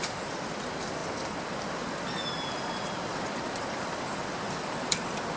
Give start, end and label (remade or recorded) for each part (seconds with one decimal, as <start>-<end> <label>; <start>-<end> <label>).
0.0-5.4 recorded